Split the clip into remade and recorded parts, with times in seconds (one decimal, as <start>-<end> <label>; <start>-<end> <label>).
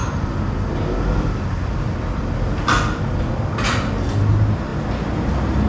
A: 0.0-5.7 recorded